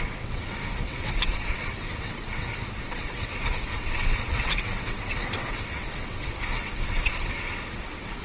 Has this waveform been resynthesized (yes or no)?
yes